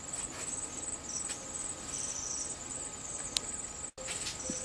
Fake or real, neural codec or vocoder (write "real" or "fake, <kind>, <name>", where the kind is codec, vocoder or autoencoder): real